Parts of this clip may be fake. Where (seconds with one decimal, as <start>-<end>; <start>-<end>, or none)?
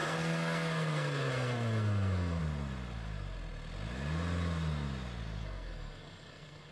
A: 0.0-2.4; 5.4-6.7